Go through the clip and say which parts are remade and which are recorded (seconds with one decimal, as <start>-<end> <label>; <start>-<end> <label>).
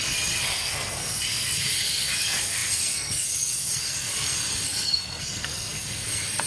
0.0-6.5 remade